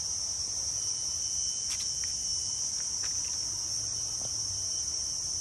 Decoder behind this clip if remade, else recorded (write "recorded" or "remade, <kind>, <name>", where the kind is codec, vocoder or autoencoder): recorded